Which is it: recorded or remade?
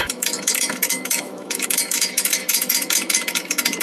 remade